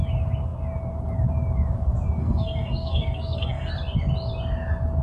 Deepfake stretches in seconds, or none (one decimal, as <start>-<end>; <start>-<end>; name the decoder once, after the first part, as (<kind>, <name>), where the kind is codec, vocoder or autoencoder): 2.2-3.7 (codec, SNAC)